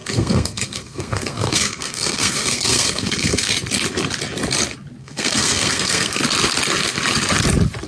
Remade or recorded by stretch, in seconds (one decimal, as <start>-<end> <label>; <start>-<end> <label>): 0.0-3.5 remade; 3.5-5.0 recorded; 5.0-6.2 remade; 6.2-7.9 recorded